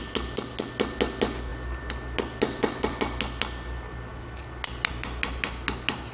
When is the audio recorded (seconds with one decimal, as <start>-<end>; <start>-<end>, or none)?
0.0-1.5; 3.0-6.1